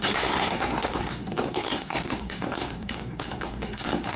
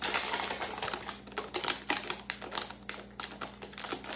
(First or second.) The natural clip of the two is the second